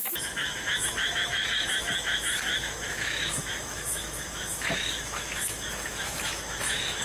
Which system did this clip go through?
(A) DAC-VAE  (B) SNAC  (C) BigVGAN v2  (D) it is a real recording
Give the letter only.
A